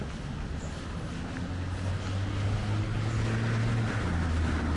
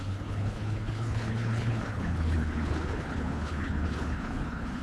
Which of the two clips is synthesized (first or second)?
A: second